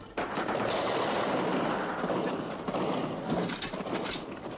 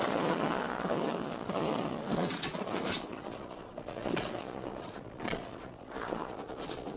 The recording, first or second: first